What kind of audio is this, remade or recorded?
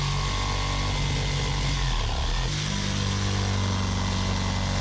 recorded